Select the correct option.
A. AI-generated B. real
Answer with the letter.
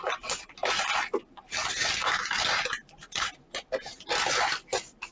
B